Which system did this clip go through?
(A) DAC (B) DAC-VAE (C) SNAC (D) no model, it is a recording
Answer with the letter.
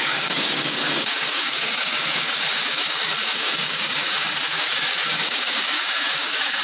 A